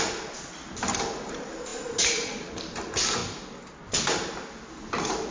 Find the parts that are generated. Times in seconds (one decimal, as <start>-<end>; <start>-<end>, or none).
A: none